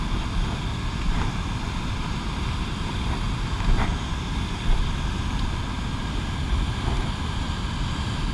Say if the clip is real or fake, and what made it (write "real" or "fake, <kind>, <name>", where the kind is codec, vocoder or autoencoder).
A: real